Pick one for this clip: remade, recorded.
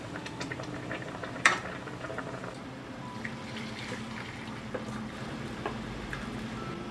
remade